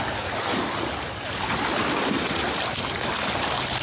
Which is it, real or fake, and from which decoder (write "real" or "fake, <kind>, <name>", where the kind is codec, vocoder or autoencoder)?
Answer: real